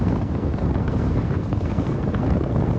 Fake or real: fake